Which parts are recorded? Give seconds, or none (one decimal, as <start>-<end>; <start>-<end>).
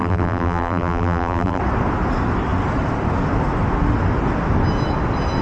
1.6-5.4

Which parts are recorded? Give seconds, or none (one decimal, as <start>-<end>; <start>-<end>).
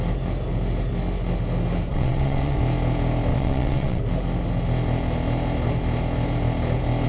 0.0-1.9; 2.6-3.3; 4.0-7.1